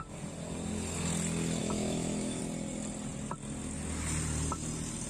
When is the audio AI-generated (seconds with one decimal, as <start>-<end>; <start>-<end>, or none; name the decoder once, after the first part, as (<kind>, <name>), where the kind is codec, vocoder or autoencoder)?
1.6-2.4 (autoencoder, DAC-VAE)